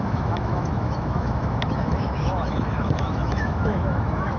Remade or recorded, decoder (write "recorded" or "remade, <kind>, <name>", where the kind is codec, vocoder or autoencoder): remade, autoencoder, DAC-VAE